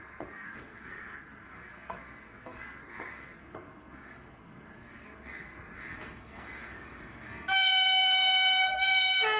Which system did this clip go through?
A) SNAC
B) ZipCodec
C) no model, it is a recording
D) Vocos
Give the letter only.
A